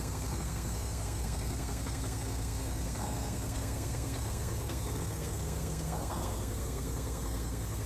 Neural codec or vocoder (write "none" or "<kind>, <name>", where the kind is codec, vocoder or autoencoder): codec, SNAC